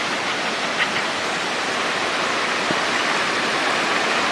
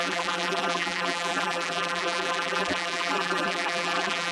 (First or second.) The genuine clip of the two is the first